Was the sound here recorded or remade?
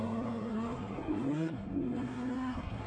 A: remade